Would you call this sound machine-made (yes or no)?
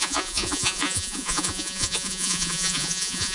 yes